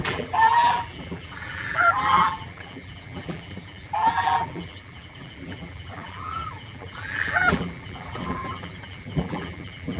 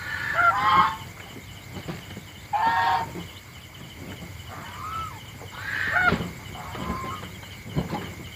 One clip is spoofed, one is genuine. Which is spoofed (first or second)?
first